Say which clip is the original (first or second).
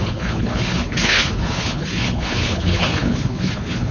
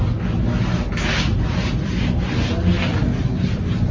second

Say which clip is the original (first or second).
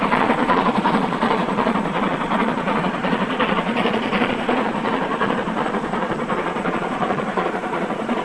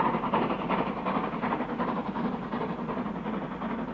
second